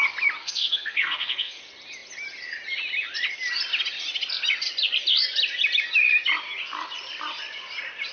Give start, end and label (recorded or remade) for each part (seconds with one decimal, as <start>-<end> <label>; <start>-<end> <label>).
0.0-0.4 recorded; 0.4-1.6 remade; 1.6-8.1 recorded